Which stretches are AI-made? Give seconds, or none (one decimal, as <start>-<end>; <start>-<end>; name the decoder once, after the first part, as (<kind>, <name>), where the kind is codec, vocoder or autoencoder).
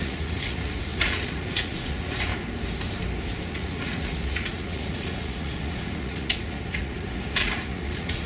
0.0-2.3 (vocoder, Vocos); 3.5-8.3